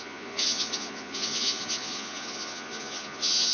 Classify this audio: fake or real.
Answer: fake